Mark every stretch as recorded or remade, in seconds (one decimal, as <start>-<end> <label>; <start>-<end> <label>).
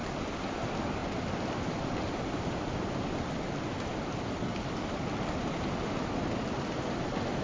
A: 0.0-7.4 recorded